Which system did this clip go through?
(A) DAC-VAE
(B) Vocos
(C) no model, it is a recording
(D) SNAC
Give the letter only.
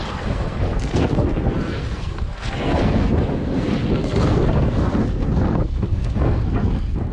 D